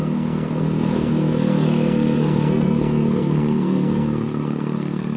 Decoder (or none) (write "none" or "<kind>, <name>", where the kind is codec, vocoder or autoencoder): codec, SNAC